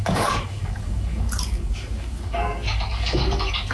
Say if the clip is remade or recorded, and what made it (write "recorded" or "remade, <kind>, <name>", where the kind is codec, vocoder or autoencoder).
remade, codec, DAC